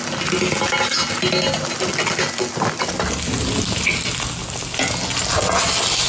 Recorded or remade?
recorded